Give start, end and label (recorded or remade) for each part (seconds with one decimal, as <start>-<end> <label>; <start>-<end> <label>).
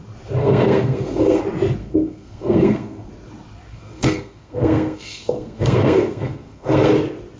0.0-0.4 recorded; 0.4-1.4 remade; 1.4-1.8 recorded; 1.8-3.1 remade; 3.1-3.7 recorded; 3.7-6.9 remade; 6.9-7.4 recorded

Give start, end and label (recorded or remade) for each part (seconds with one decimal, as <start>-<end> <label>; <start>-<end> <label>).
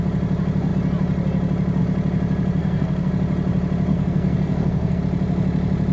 0.0-2.6 recorded; 2.6-3.1 remade; 3.1-3.9 recorded; 3.9-5.0 remade; 5.0-5.9 recorded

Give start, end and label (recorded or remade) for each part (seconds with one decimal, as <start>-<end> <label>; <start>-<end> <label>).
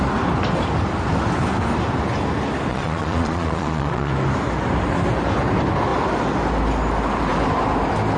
0.0-2.7 recorded; 2.7-4.1 remade; 4.1-8.2 recorded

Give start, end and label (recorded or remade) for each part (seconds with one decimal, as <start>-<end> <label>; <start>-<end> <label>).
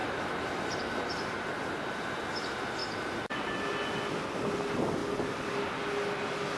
0.0-1.5 remade; 1.5-2.8 recorded; 2.8-3.5 remade; 3.5-5.0 recorded; 5.0-5.6 remade; 5.6-6.6 recorded